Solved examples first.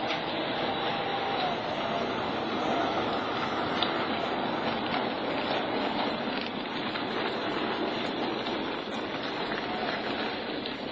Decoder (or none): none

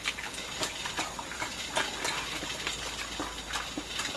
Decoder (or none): none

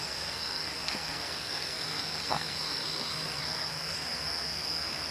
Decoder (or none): codec, SNAC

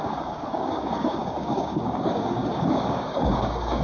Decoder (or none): codec, DAC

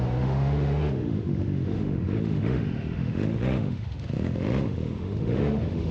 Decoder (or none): autoencoder, DAC-VAE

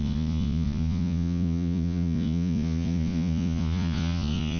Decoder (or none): vocoder, Vocos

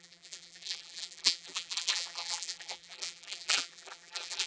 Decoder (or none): vocoder, BigVGAN v2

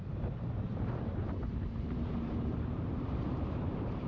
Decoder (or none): vocoder, BigVGAN v2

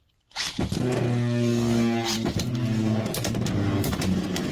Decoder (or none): none